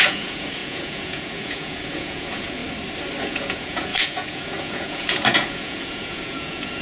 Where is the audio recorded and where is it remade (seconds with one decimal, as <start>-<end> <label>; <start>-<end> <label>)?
0.0-2.6 remade; 2.6-3.2 recorded; 3.2-6.8 remade